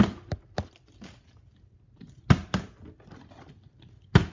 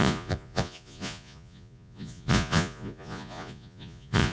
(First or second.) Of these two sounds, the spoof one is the second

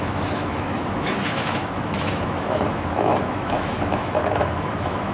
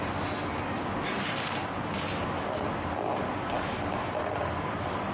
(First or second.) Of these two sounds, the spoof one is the first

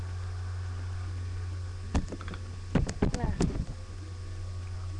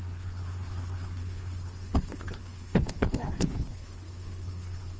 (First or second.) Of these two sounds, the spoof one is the second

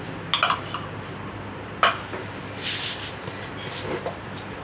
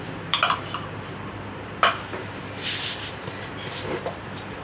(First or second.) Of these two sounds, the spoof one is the second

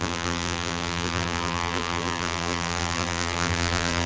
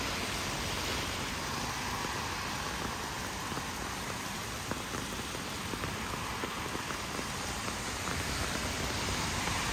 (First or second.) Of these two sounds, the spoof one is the first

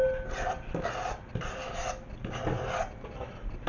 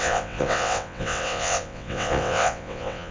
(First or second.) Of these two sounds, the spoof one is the second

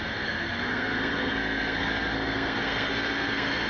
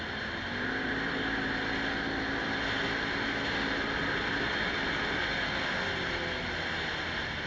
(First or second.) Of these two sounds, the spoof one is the first